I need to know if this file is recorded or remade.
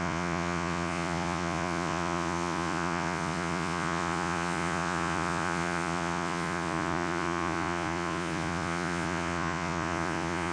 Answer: remade